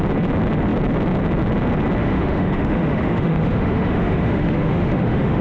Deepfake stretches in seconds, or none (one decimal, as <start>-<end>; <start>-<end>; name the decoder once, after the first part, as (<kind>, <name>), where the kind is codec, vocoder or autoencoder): 2.0-5.4 (autoencoder, DAC-VAE)